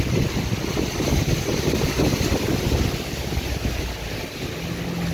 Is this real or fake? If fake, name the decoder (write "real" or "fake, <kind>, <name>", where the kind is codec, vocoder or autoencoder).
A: real